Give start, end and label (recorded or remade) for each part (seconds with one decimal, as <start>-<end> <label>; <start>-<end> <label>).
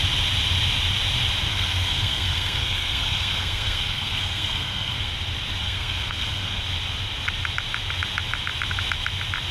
0.0-1.5 recorded; 1.5-5.1 remade; 5.1-5.6 recorded; 5.6-6.6 remade; 6.6-9.5 recorded